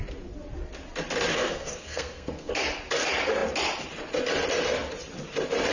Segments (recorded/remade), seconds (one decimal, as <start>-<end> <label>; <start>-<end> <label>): 0.0-1.3 recorded; 1.3-2.5 remade; 2.5-5.7 recorded